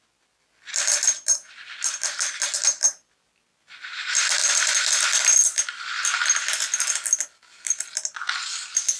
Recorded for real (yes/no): yes